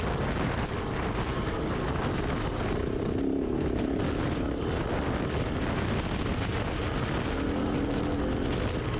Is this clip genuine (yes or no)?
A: yes